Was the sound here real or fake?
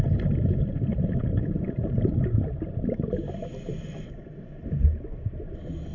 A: real